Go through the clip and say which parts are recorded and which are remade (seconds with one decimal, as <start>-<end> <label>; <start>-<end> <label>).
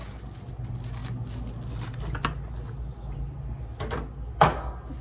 0.0-5.0 recorded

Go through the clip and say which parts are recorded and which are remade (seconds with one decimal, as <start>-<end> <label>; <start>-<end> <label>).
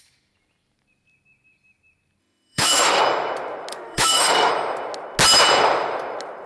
0.0-2.2 recorded; 2.2-3.0 remade; 3.0-3.7 recorded; 3.7-4.5 remade; 4.5-6.5 recorded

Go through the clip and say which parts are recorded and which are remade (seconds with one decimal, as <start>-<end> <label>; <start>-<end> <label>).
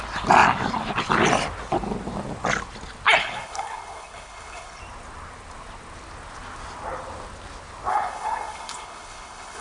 0.0-3.2 recorded; 3.2-4.8 remade; 4.8-7.9 recorded; 7.9-9.6 remade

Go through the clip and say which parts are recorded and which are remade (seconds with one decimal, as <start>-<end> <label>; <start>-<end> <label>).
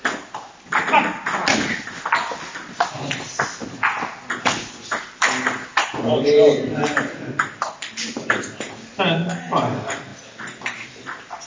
0.0-11.5 recorded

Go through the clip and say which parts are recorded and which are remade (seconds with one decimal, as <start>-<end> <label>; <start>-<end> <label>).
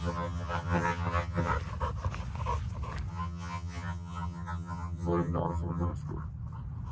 0.0-1.5 remade; 1.5-3.1 recorded; 3.1-5.9 remade; 5.9-6.9 recorded